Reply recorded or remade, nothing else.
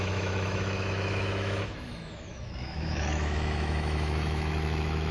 remade